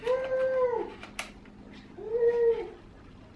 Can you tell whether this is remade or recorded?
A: recorded